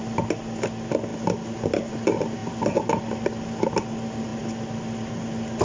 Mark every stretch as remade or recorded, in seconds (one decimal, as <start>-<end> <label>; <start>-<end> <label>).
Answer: 0.0-2.4 recorded; 2.4-3.0 remade; 3.0-5.6 recorded